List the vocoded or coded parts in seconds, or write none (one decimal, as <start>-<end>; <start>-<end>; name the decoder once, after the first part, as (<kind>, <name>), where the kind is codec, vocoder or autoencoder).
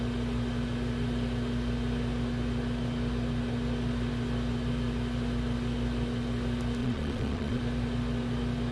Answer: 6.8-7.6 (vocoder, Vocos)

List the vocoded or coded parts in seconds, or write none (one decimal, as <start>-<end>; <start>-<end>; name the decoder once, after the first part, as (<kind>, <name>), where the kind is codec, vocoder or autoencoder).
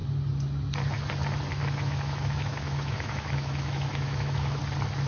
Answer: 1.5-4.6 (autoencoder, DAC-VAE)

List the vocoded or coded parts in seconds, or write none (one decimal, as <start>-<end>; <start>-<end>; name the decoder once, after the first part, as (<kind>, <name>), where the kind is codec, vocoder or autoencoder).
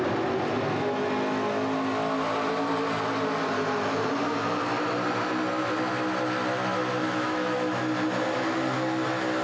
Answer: 7.0-7.8 (autoencoder, DAC-VAE)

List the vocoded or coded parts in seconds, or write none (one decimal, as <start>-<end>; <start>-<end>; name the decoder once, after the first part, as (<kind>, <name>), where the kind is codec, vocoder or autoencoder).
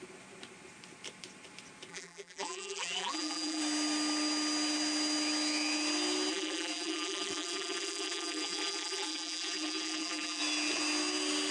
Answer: 1.9-3.6 (vocoder, BigVGAN v2); 6.3-10.4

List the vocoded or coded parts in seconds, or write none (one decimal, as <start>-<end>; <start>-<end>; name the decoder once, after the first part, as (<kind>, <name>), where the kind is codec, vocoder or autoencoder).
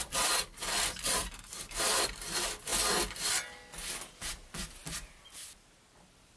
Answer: 1.2-2.3 (vocoder, BigVGAN v2); 4.8-5.9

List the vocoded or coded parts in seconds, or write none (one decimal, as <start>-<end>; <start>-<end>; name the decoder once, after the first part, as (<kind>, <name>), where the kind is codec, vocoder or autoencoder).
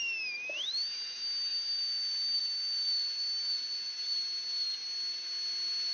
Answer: none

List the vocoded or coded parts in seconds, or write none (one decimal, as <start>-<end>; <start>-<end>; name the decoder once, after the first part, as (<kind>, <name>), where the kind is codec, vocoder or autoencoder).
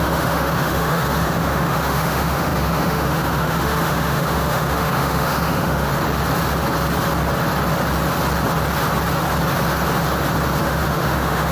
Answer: 0.0-5.9 (autoencoder, DAC-VAE); 10.6-11.5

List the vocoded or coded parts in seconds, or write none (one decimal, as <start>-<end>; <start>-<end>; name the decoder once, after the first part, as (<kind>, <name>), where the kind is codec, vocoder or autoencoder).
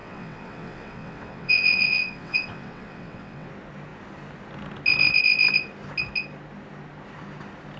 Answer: 0.0-3.5 (vocoder, WaveNeXt)